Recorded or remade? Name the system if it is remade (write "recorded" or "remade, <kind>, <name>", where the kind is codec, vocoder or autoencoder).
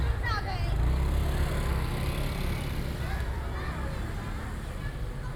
recorded